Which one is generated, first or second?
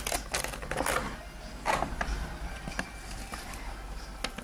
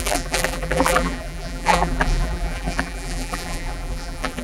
second